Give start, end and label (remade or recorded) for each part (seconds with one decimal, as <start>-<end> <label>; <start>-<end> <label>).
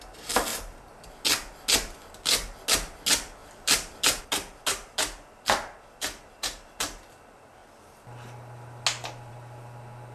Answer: 0.0-0.5 recorded; 0.5-1.1 remade; 1.1-3.4 recorded; 3.4-4.2 remade; 4.2-10.1 recorded